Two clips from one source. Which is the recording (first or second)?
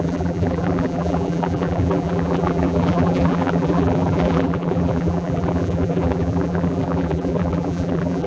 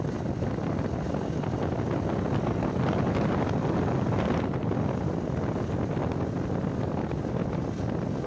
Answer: second